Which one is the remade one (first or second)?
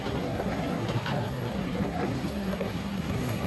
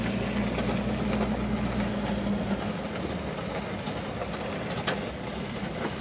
first